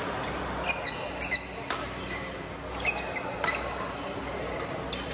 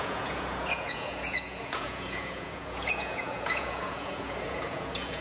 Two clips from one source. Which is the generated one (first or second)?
second